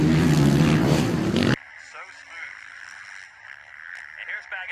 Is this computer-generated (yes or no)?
no